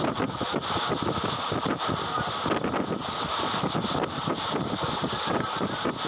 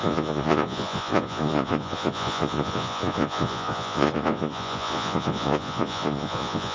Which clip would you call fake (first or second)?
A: second